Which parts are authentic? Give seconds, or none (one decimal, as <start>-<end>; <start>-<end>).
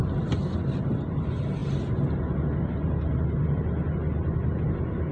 0.0-5.1